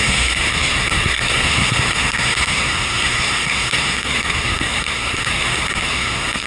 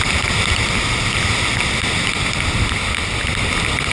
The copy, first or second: first